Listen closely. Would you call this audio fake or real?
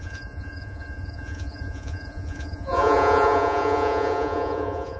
fake